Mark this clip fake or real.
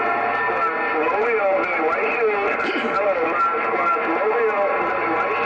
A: real